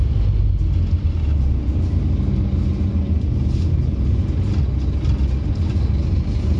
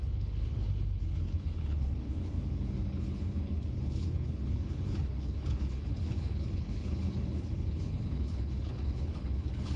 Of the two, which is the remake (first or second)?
second